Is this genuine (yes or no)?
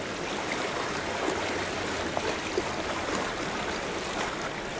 yes